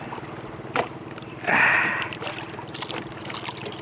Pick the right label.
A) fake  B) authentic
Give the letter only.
B